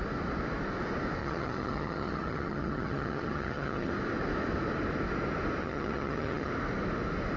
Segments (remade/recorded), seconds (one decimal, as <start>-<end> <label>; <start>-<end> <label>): 0.0-1.2 recorded; 1.2-3.9 remade; 3.9-5.6 recorded; 5.6-6.5 remade; 6.5-7.4 recorded